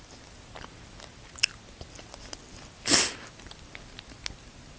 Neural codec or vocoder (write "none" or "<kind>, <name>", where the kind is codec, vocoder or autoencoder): none